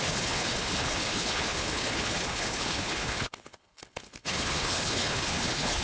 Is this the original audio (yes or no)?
no